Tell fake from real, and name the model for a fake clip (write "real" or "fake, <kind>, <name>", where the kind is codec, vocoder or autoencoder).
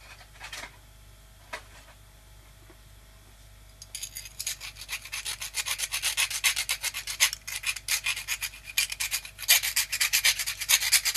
real